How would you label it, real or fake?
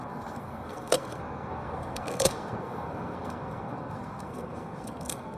fake